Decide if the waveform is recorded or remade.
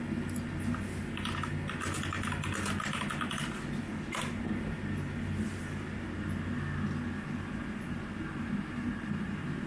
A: recorded